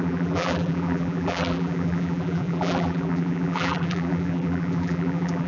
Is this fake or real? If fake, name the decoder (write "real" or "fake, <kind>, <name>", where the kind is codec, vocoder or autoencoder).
fake, vocoder, BigVGAN v2